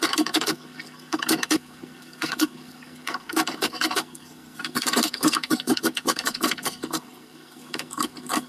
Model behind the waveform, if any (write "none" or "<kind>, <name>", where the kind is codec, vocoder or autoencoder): codec, SNAC